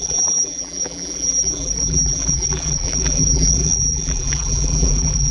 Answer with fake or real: fake